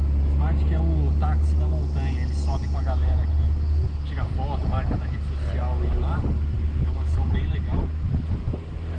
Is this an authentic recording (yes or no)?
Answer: yes